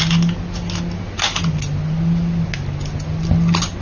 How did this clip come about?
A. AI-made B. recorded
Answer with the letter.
B